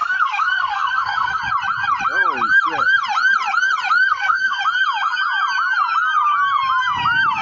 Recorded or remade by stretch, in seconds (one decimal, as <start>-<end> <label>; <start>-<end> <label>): 0.0-1.4 remade; 1.4-4.1 recorded; 4.1-4.6 remade; 4.6-7.4 recorded

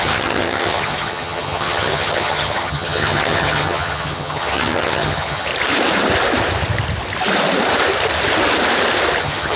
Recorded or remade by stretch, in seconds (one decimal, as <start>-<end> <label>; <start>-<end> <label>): 0.0-5.5 remade; 5.5-9.2 recorded; 9.2-9.6 remade